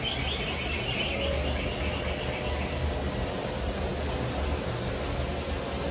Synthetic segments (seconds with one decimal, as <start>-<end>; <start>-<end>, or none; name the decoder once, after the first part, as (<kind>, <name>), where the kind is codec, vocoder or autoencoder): none